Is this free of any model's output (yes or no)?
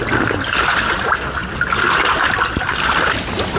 yes